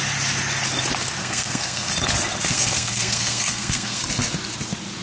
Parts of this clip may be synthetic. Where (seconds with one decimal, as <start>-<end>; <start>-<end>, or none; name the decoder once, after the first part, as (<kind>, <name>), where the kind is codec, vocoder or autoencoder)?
1.2-1.9 (codec, SNAC); 2.5-4.0